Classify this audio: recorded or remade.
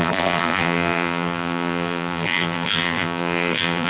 remade